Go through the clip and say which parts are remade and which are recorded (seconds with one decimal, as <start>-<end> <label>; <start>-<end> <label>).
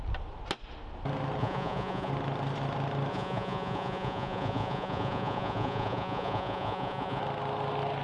0.0-1.4 recorded; 1.4-2.1 remade; 2.1-3.1 recorded; 3.1-7.2 remade; 7.2-8.0 recorded